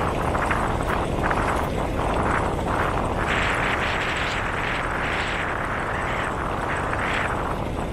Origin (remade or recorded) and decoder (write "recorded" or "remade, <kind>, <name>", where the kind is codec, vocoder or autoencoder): recorded